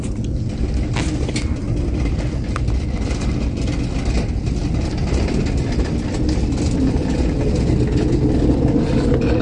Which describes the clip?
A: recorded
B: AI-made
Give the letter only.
A